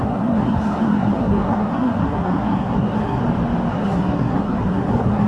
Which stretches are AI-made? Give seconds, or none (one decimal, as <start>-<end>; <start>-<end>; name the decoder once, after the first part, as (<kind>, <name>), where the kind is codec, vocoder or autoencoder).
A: 0.0-3.2 (codec, SNAC); 3.7-5.3